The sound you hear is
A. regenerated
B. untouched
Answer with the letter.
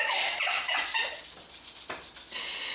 B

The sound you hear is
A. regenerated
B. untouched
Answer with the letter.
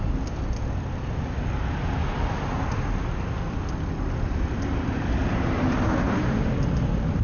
B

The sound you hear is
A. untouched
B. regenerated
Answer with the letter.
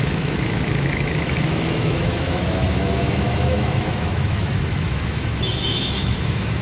B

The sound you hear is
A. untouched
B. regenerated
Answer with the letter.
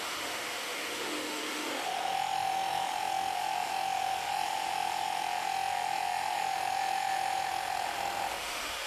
B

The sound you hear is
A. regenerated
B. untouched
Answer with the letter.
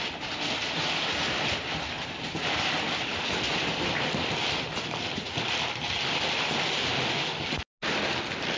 B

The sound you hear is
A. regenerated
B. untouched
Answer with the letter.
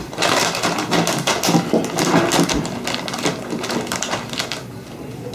B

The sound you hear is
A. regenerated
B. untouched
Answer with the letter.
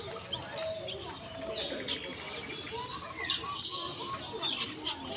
B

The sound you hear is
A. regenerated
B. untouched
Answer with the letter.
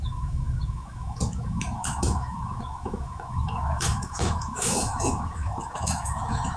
A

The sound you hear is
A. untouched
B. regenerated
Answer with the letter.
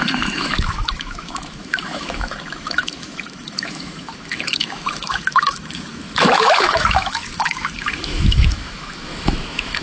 B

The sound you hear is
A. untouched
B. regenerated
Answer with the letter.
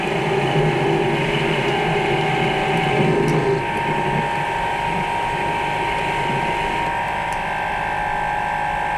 A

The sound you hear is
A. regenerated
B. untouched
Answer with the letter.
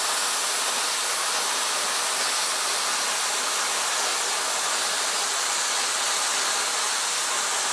B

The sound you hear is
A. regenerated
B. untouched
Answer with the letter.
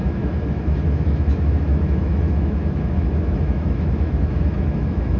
A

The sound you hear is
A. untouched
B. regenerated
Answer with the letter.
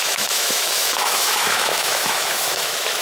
B